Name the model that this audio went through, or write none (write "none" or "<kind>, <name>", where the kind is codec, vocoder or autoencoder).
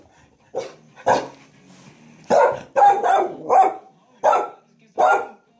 none